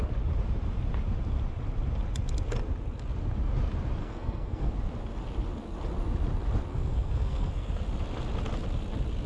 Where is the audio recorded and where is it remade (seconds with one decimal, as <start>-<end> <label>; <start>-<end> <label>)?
0.0-4.0 recorded; 4.0-4.7 remade; 4.7-6.7 recorded; 6.7-7.8 remade; 7.8-9.3 recorded

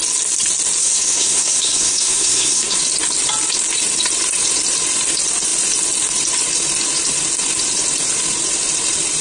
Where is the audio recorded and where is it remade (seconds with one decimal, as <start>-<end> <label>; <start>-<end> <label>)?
0.0-0.8 recorded; 0.8-2.8 remade; 2.8-9.2 recorded